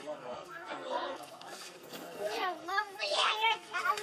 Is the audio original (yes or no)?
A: no